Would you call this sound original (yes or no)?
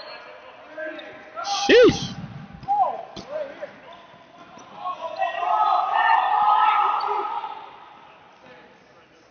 yes